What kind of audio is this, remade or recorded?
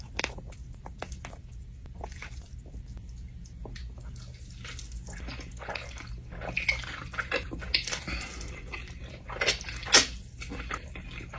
recorded